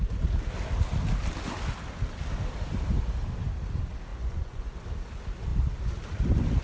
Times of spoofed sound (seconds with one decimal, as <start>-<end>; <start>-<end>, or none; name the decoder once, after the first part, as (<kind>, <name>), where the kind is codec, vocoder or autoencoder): 4.1-4.7 (vocoder, Vocos)